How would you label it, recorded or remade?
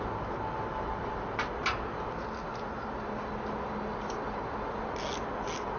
recorded